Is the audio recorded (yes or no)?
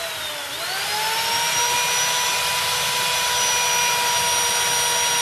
yes